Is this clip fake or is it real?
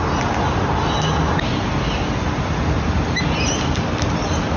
real